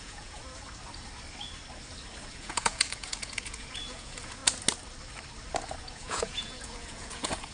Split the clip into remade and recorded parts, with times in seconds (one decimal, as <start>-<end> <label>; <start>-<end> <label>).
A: 0.0-0.4 remade; 0.4-2.3 recorded; 2.3-4.4 remade; 4.4-5.8 recorded; 5.8-7.5 remade